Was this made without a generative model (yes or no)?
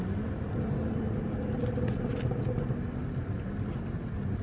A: yes